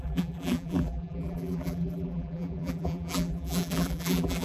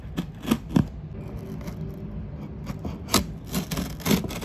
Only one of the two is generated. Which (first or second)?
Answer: first